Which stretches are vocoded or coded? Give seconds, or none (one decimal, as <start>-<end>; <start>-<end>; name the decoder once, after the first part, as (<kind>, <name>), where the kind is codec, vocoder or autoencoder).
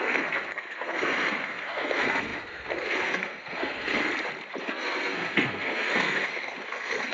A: 0.0-4.1 (codec, SNAC); 4.6-7.1